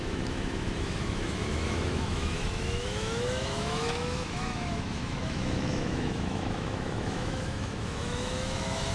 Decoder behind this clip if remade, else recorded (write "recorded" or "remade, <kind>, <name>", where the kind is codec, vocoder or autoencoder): remade, autoencoder, DAC-VAE